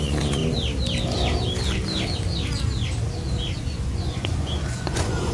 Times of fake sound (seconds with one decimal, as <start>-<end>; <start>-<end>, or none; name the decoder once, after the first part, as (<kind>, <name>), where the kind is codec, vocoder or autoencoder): 0.0-0.4 (vocoder, Vocos); 3.6-5.3